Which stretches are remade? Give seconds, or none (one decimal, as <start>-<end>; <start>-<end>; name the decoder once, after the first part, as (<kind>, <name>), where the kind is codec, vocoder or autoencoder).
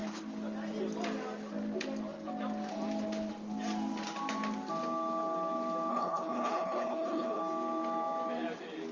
5.9-7.4 (codec, HILCodec)